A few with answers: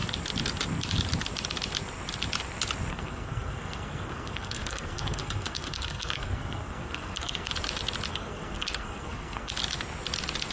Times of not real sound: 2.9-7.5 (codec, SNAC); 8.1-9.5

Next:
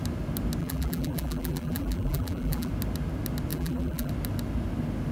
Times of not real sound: 0.6-2.7 (vocoder, BigVGAN v2); 3.5-4.1

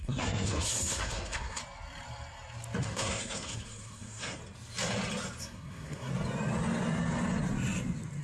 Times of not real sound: 0.0-1.6 (codec, SNAC); 2.8-4.4; 5.4-6.1